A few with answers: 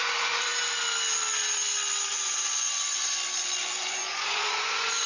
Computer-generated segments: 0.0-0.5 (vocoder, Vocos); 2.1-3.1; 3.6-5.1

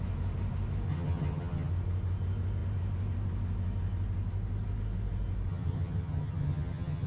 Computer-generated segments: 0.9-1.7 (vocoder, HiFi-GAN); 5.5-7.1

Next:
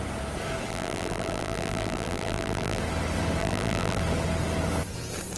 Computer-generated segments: 0.7-2.8 (vocoder, BigVGAN v2); 3.4-4.0

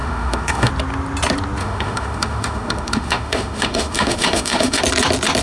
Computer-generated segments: 0.0-0.7 (autoencoder, DAC-VAE); 1.6-4.8

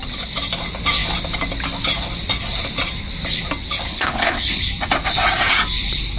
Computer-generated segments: 3.9-4.6 (codec, HILCodec)

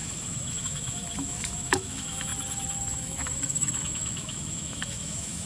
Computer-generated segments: 0.0-2.3 (autoencoder, DAC-VAE); 2.9-5.5